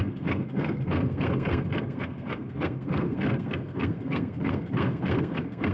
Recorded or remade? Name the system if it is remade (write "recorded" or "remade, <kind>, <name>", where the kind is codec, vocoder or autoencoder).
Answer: remade, codec, SNAC